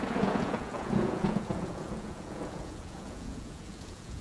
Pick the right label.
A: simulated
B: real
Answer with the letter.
A